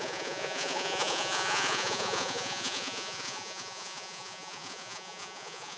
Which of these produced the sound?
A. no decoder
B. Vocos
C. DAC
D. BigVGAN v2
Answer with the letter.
B